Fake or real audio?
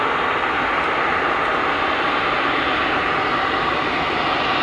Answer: real